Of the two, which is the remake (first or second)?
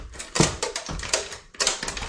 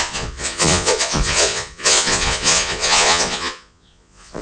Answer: second